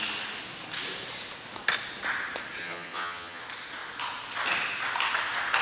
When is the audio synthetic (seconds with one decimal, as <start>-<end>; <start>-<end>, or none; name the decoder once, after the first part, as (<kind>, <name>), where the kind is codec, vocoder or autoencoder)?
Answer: 2.6-3.4 (vocoder, HiFi-GAN)